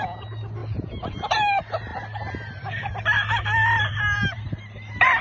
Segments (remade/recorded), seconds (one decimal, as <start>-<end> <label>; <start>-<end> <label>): 0.0-0.6 recorded; 0.6-1.3 remade; 1.3-1.9 recorded; 1.9-3.0 remade; 3.0-3.9 recorded; 3.9-5.2 remade